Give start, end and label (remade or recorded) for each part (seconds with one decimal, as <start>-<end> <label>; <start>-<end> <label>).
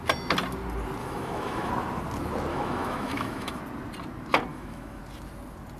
0.0-1.0 recorded; 1.0-1.7 remade; 1.7-2.5 recorded; 2.5-3.6 remade; 3.6-4.5 recorded; 4.5-5.0 remade; 5.0-5.8 recorded